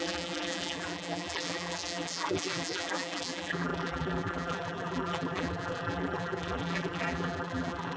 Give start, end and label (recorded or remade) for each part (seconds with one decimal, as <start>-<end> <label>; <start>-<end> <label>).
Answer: 0.0-8.0 remade